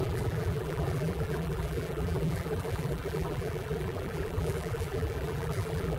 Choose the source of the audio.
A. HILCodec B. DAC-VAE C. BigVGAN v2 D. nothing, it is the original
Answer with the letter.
C